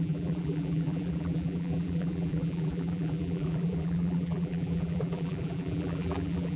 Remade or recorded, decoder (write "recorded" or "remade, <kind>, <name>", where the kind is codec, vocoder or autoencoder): remade, vocoder, BigVGAN v2